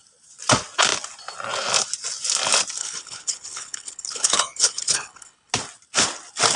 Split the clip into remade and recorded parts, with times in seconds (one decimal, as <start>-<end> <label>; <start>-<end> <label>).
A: 0.0-2.8 recorded; 2.8-5.5 remade; 5.5-6.6 recorded